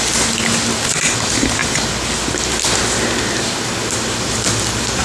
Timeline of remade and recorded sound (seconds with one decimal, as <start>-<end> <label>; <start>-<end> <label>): 0.0-5.0 recorded